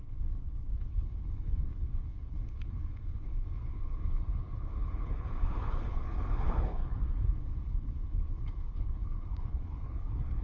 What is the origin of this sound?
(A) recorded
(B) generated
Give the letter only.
B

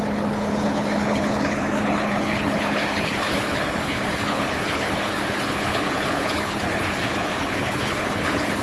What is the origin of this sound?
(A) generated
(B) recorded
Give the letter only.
A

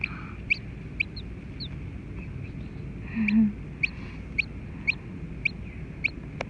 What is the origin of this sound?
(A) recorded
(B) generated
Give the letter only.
A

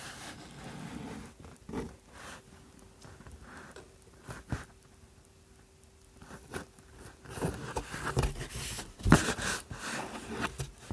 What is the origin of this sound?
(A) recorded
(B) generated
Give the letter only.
A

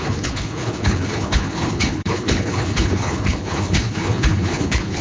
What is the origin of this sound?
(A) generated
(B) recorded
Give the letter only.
A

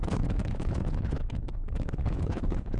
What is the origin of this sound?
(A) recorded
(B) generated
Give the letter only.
B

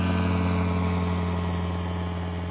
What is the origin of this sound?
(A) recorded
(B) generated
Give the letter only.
A